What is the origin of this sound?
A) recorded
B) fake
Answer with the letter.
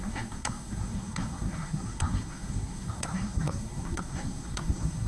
B